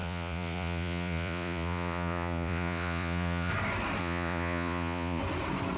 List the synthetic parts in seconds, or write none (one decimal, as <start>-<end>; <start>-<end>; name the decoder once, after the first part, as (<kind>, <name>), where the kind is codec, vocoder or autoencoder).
0.0-3.5 (vocoder, Vocos); 4.0-5.2